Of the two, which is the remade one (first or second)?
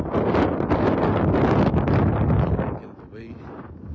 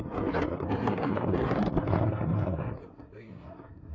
second